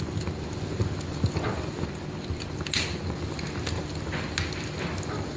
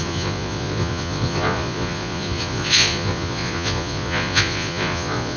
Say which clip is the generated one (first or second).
second